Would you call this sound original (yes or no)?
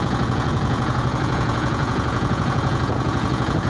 no